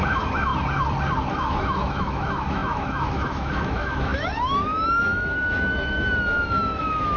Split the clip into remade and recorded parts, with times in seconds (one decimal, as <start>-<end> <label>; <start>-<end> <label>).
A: 0.0-0.5 remade; 0.5-1.3 recorded; 1.3-7.2 remade